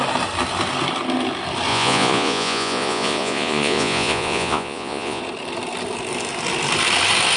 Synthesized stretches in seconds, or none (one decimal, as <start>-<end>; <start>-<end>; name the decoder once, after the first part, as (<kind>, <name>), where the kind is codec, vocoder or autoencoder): 1.7-5.2 (vocoder, Vocos)